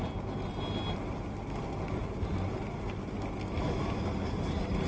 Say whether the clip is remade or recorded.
recorded